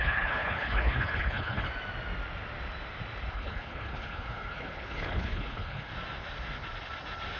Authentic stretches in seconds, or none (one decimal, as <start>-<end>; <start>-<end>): 1.7-3.3; 5.9-7.4